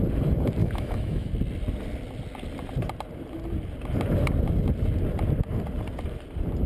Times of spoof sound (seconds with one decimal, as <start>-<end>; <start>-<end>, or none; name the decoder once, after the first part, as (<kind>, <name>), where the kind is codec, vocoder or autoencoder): 0.6-1.3 (autoencoder, DAC-VAE)